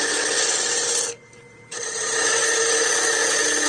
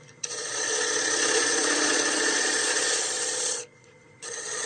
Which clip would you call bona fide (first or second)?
first